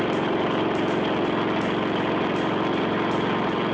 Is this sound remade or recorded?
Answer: recorded